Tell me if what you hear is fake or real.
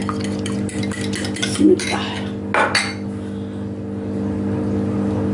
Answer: real